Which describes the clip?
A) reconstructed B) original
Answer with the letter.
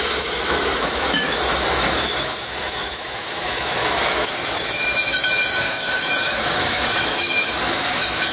A